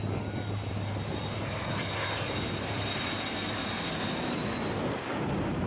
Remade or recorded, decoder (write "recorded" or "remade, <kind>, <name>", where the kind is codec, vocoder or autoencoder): recorded